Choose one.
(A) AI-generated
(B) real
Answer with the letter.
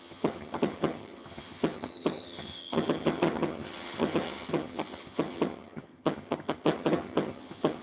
A